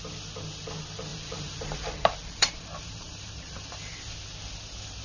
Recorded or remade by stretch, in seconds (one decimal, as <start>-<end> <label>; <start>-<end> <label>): 0.0-1.1 recorded; 1.1-4.1 remade; 4.1-5.0 recorded

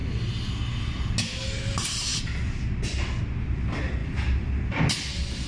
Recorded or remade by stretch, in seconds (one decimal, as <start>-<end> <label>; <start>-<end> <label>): 0.0-1.7 recorded; 1.7-5.5 remade

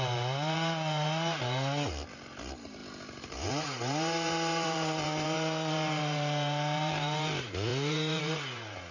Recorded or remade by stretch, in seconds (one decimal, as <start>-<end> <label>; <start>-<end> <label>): 0.0-8.9 remade

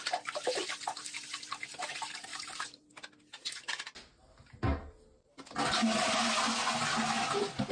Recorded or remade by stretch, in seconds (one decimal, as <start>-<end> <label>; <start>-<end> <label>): 0.0-2.3 recorded; 2.3-2.9 remade; 2.9-7.7 recorded

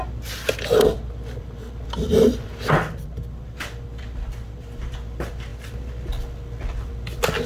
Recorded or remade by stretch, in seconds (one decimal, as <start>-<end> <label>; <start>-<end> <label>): 0.0-7.5 recorded

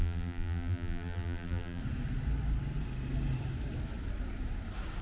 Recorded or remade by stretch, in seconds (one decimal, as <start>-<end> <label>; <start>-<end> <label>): 0.0-1.8 remade; 1.8-5.0 recorded